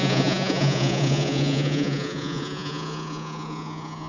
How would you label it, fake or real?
fake